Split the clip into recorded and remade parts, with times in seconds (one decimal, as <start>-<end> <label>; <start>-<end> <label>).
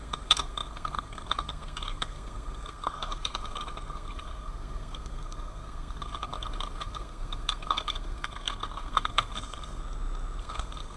0.0-9.8 remade; 9.8-10.4 recorded; 10.4-11.0 remade